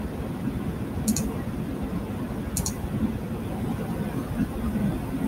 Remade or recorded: recorded